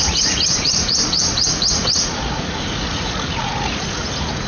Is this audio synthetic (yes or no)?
yes